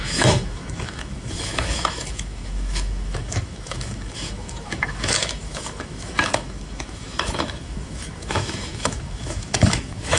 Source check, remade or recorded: remade